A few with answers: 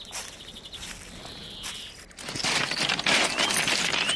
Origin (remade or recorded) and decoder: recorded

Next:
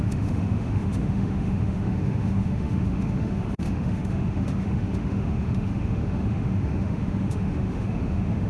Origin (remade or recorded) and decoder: remade, autoencoder, DAC-VAE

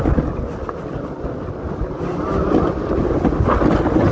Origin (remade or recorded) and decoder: recorded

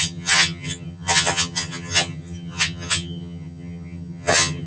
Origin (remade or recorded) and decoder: remade, vocoder, HiFi-GAN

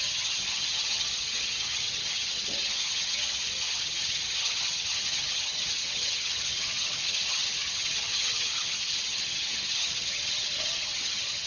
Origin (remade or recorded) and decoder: remade, vocoder, HiFi-GAN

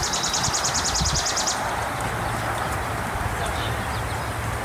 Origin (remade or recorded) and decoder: recorded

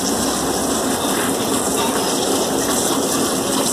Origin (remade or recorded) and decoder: remade, vocoder, BigVGAN v2